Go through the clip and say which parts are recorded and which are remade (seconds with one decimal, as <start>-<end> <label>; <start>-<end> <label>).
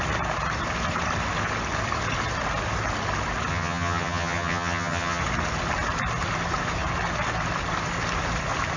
0.0-3.5 recorded; 3.5-5.2 remade; 5.2-8.8 recorded